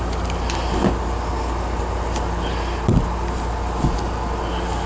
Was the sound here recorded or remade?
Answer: recorded